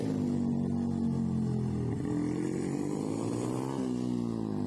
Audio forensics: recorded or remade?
recorded